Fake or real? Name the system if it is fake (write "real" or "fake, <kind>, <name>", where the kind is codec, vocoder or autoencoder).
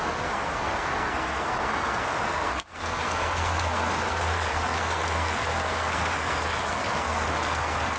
fake, codec, SNAC